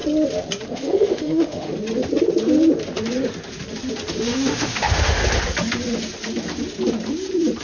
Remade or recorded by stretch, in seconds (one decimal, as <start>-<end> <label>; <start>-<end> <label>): 0.0-0.7 recorded; 0.7-1.7 remade; 1.7-4.2 recorded; 4.2-5.2 remade; 5.2-7.6 recorded